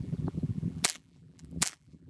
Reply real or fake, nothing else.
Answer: fake